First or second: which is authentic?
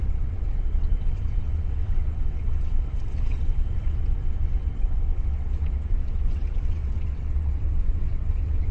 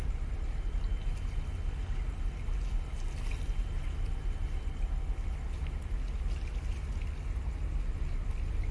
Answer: second